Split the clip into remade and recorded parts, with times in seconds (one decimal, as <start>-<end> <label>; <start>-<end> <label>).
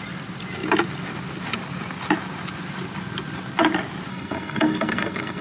0.0-4.1 recorded; 4.1-5.4 remade